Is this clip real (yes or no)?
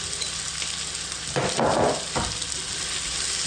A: yes